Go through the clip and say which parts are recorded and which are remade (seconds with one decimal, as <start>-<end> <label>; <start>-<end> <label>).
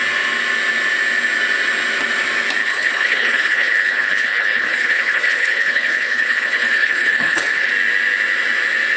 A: 0.0-2.6 recorded; 2.6-7.7 remade; 7.7-9.0 recorded